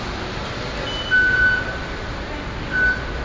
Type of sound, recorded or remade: recorded